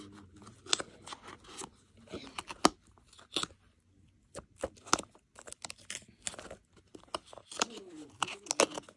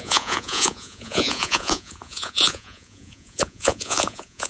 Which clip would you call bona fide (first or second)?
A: first